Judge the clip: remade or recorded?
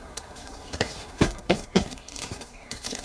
remade